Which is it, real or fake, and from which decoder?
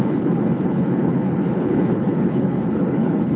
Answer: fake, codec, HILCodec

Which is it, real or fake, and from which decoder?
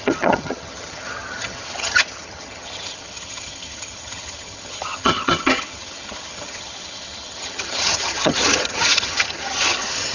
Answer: fake, vocoder, HiFi-GAN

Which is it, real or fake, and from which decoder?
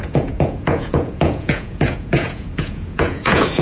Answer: fake, vocoder, Vocos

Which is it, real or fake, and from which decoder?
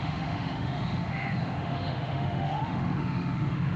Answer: fake, autoencoder, DAC-VAE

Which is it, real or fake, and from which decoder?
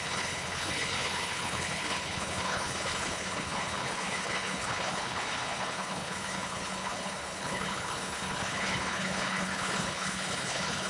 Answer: fake, codec, HILCodec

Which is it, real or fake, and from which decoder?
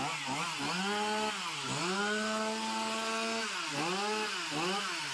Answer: real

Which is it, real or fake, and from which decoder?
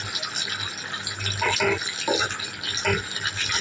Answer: real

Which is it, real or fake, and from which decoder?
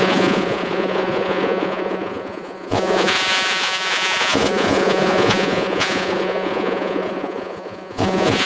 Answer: fake, vocoder, Vocos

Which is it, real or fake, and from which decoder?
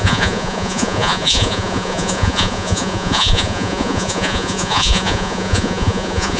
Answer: fake, vocoder, Vocos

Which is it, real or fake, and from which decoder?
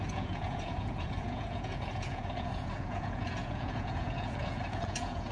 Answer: fake, vocoder, Vocos